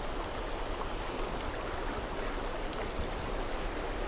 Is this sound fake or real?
real